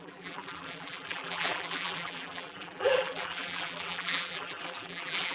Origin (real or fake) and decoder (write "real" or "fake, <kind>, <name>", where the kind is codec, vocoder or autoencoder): fake, vocoder, BigVGAN v2